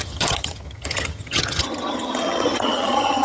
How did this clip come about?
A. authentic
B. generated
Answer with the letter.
B